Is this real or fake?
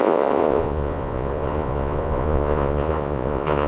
fake